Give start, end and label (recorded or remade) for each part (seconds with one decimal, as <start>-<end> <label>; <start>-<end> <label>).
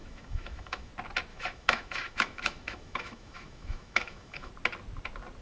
0.0-0.9 remade; 0.9-1.3 recorded; 1.3-4.5 remade; 4.5-5.4 recorded